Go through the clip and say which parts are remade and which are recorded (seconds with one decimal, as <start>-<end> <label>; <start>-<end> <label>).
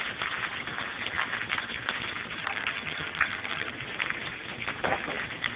0.0-2.4 recorded; 2.4-3.7 remade; 3.7-5.6 recorded